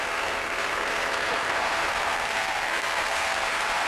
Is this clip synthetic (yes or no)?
yes